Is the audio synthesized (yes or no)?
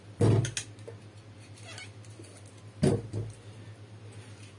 no